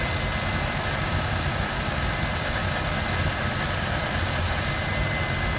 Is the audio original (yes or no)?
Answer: yes